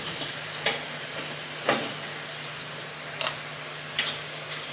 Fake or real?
real